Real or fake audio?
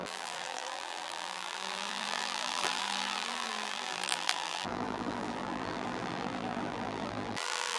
fake